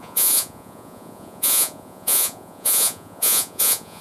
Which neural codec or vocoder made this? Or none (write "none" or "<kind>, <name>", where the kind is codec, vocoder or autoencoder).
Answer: vocoder, Vocos